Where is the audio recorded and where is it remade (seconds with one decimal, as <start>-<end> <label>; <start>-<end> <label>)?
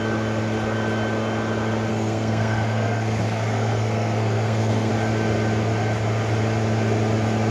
0.0-1.9 recorded; 1.9-4.9 remade; 4.9-7.5 recorded